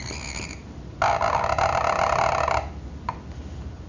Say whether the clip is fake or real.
real